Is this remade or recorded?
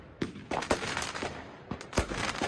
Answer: recorded